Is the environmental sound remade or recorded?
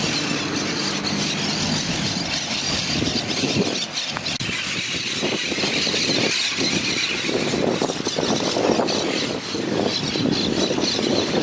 recorded